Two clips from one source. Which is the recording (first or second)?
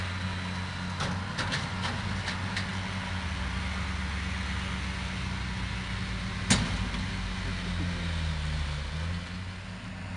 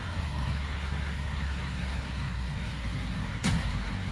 first